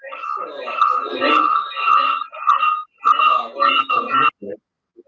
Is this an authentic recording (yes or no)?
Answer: yes